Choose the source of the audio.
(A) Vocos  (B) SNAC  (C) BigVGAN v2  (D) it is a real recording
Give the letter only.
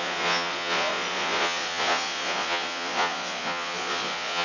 A